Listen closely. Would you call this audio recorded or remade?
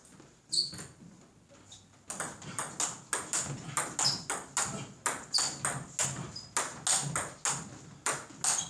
recorded